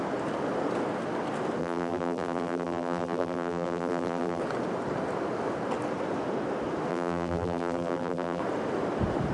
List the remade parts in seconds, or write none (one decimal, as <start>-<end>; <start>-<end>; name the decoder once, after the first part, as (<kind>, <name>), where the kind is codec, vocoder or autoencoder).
1.6-4.4 (vocoder, BigVGAN v2); 6.9-8.4